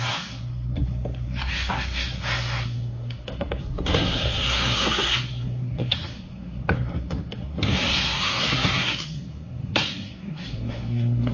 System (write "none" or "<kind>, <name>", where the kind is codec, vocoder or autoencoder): codec, SNAC